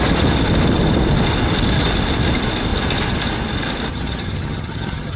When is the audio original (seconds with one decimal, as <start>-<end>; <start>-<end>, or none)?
0.0-3.9